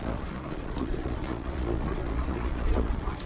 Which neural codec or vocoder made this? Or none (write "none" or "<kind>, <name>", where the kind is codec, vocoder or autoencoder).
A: vocoder, Vocos